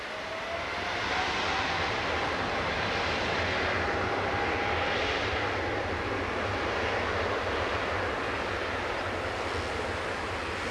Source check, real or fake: real